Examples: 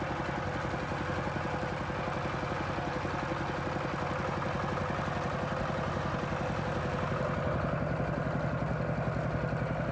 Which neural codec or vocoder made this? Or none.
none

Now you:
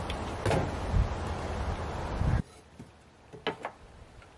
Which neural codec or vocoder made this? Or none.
none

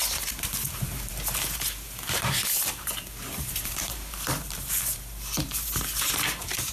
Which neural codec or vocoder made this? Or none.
vocoder, BigVGAN v2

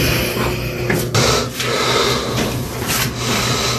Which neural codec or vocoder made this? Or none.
none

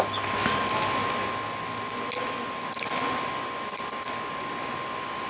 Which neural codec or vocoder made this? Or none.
none